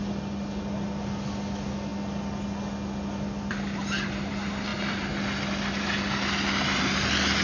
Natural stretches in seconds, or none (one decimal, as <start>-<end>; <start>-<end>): 0.0-7.4